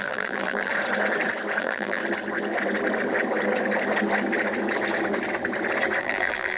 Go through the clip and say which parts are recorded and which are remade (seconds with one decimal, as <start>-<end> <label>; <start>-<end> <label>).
0.0-0.7 remade; 0.7-1.6 recorded; 1.6-2.0 remade; 2.0-6.0 recorded; 6.0-6.6 remade